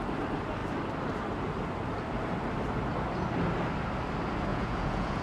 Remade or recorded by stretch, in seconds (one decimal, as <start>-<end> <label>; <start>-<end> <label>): 0.0-4.5 recorded; 4.5-5.2 remade